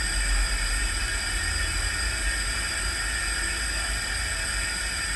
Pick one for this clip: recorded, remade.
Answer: recorded